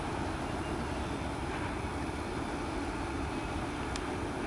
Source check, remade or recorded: recorded